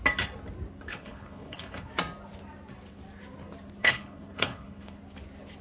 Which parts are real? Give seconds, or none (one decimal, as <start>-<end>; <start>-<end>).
0.0-0.9; 1.9-3.8; 5.0-5.6